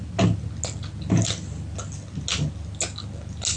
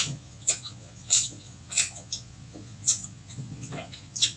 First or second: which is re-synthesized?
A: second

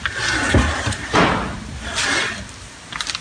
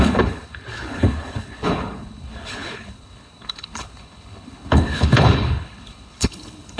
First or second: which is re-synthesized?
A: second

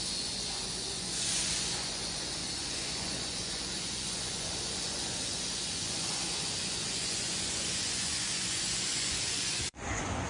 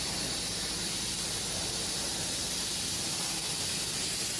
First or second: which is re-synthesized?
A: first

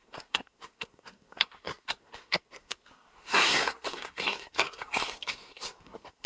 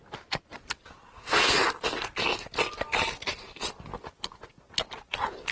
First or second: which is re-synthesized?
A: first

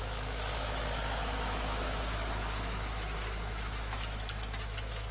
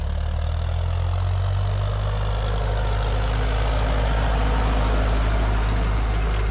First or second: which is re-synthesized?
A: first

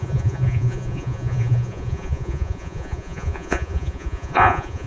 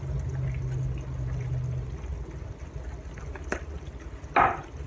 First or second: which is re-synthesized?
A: first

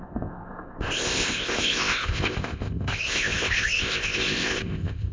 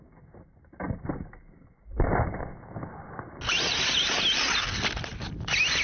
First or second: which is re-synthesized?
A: first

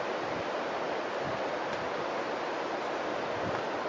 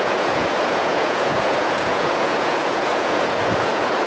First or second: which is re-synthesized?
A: second